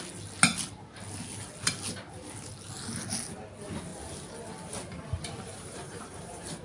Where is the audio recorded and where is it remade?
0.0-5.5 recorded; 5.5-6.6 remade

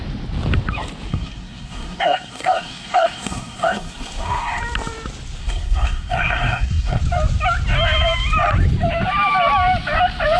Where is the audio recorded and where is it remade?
0.0-1.1 recorded; 1.1-4.6 remade; 4.6-5.4 recorded; 5.4-7.0 remade; 7.0-10.4 recorded

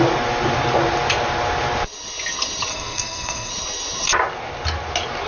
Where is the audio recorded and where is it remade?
0.0-2.7 recorded; 2.7-3.5 remade; 3.5-5.3 recorded

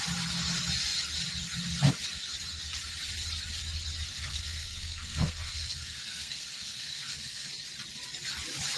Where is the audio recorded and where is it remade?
0.0-4.1 recorded; 4.1-7.5 remade; 7.5-8.8 recorded

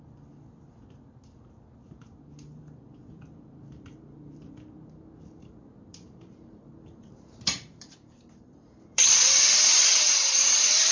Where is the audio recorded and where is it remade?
0.0-5.9 recorded; 5.9-10.9 remade